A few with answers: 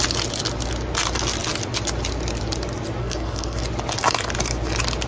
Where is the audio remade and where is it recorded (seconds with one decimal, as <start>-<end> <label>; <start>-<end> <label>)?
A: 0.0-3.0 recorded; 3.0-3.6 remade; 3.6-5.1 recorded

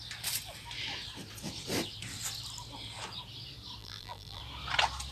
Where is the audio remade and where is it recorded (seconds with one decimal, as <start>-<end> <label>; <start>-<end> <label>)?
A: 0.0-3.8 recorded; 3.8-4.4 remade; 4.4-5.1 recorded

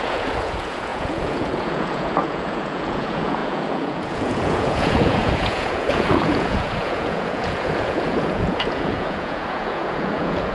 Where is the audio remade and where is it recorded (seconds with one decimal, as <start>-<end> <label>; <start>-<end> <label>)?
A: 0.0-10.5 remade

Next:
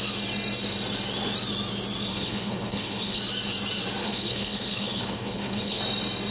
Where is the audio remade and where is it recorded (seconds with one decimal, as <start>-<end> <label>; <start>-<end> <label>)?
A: 0.0-2.1 recorded; 2.1-3.2 remade; 3.2-4.0 recorded; 4.0-5.8 remade; 5.8-6.3 recorded

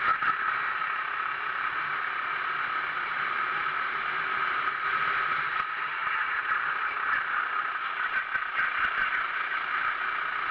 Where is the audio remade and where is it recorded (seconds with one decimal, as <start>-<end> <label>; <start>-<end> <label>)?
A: 0.0-8.4 recorded; 8.4-9.3 remade; 9.3-10.5 recorded